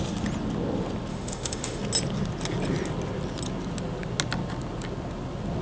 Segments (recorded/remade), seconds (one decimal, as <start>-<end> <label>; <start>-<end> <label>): 0.0-1.1 recorded; 1.1-1.8 remade; 1.8-5.6 recorded